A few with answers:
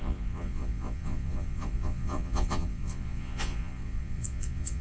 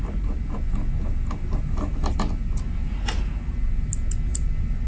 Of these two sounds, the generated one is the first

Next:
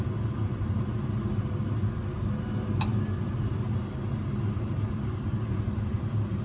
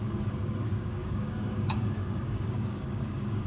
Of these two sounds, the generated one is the second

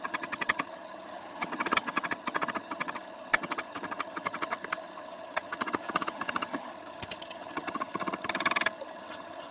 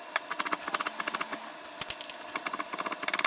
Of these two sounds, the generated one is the first